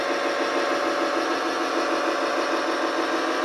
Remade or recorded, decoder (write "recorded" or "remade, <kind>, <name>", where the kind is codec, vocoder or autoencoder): recorded